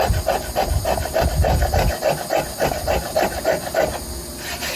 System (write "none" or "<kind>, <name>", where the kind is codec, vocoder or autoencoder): none